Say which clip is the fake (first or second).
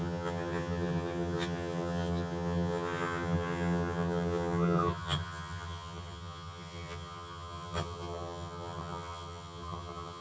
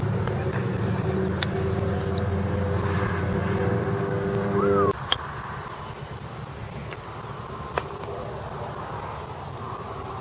first